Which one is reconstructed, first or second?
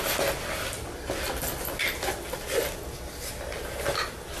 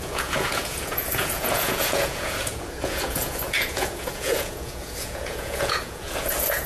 second